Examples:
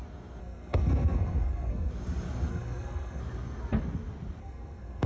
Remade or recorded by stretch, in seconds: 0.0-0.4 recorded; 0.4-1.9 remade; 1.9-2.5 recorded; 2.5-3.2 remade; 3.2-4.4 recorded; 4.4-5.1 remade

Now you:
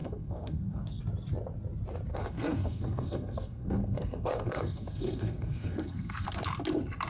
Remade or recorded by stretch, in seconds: 0.0-1.0 remade; 1.0-2.1 recorded; 2.1-6.4 remade; 6.4-7.1 recorded

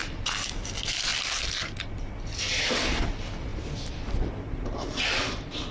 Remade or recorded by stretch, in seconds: 0.0-5.7 recorded